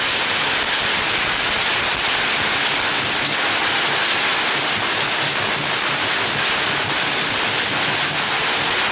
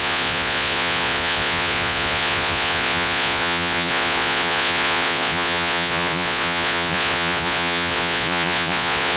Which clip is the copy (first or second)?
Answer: second